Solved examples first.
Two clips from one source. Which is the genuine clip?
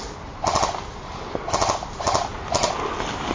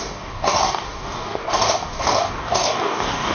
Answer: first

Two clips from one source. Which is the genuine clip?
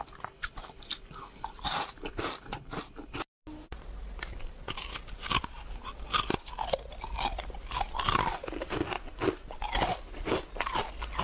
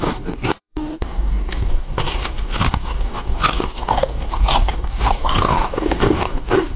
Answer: first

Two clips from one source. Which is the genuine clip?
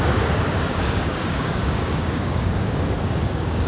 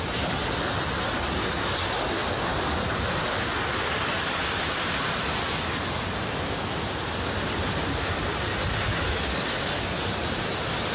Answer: second